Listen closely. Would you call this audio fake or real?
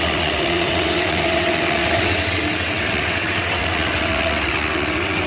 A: fake